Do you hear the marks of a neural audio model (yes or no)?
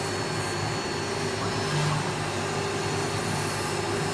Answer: no